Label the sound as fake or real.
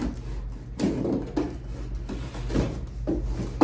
real